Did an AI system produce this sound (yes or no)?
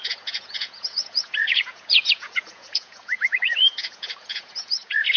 yes